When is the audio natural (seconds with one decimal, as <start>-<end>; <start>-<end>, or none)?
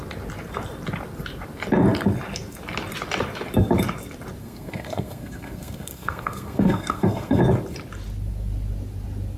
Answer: 0.0-4.4; 7.4-9.4